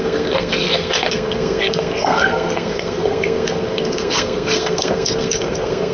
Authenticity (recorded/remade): remade